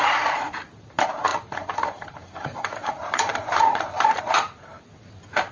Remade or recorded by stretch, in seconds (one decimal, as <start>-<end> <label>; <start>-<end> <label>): 0.0-1.3 recorded; 1.3-4.2 remade; 4.2-5.5 recorded